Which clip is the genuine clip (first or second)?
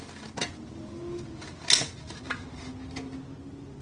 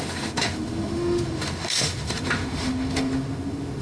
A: first